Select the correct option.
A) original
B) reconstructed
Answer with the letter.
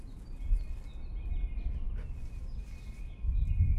A